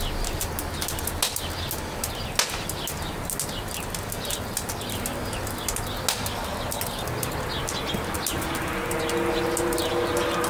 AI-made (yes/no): no